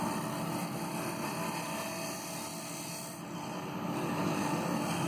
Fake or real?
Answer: real